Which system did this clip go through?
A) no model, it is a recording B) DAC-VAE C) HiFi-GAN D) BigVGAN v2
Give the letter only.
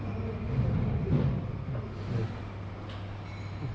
A